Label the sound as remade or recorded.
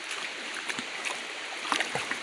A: remade